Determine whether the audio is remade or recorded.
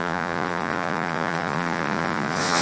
remade